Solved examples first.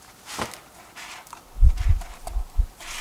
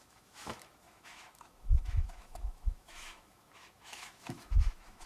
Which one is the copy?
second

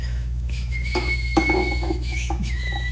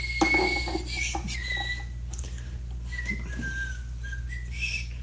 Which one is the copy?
first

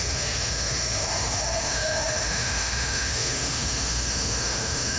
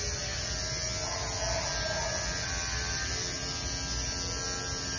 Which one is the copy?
first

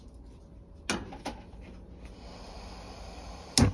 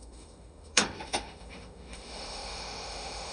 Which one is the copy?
second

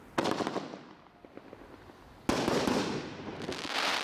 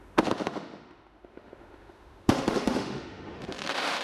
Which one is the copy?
second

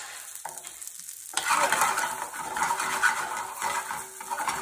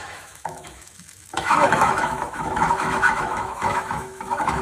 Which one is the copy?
second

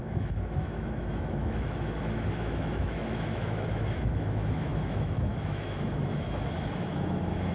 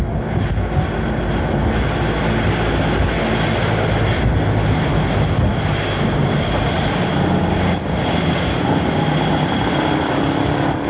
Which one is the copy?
first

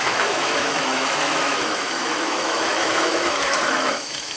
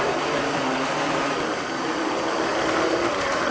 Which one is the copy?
first